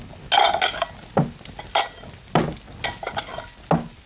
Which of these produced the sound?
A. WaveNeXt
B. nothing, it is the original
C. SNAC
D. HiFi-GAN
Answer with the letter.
B